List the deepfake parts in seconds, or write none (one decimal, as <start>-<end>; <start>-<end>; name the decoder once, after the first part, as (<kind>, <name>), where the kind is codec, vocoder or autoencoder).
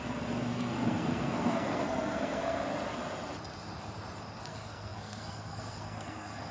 0.0-2.7 (codec, SNAC); 4.4-6.5